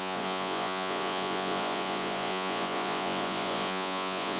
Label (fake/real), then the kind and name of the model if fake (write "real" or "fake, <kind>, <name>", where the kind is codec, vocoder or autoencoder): fake, vocoder, Vocos